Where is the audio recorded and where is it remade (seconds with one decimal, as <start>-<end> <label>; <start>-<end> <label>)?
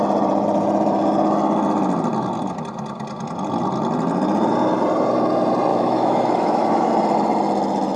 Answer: 0.0-5.7 recorded; 5.7-6.9 remade; 6.9-8.0 recorded